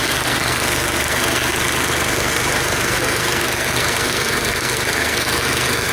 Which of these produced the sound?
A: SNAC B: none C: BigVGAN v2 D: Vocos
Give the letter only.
A